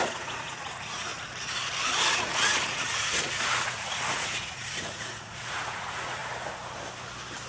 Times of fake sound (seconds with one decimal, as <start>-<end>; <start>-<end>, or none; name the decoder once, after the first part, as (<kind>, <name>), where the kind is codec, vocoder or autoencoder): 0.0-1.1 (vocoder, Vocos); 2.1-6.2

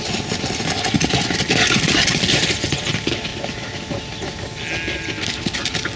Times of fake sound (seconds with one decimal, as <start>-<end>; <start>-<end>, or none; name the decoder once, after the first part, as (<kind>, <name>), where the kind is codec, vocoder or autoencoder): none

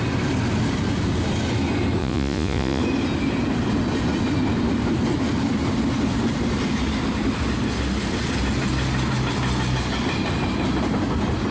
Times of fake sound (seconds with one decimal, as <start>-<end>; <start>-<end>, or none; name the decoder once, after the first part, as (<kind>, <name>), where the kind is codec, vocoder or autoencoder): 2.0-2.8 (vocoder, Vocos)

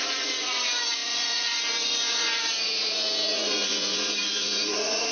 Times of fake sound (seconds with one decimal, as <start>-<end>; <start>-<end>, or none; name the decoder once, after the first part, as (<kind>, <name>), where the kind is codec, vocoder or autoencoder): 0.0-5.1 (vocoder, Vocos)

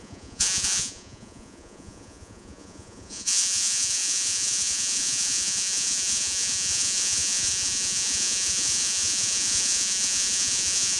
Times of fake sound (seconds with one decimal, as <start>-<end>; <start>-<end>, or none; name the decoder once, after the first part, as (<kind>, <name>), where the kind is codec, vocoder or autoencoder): 0.0-11.0 (vocoder, Vocos)

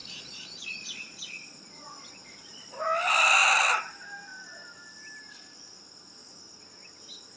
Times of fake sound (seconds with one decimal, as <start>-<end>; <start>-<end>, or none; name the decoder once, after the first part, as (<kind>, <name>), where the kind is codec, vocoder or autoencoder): 0.0-2.8 (vocoder, Vocos)